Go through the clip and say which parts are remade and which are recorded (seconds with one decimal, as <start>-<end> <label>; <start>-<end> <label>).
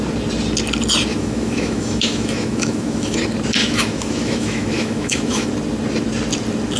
0.0-1.1 recorded; 1.1-3.2 remade; 3.2-3.6 recorded; 3.6-5.5 remade; 5.5-6.8 recorded